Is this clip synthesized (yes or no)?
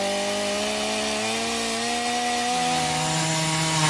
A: no